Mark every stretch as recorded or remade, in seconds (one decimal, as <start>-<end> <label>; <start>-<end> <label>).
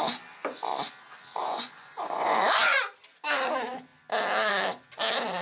0.0-1.4 recorded; 1.4-2.8 remade; 2.8-5.4 recorded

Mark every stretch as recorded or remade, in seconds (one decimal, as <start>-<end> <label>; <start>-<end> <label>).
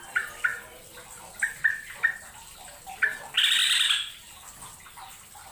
0.0-5.5 recorded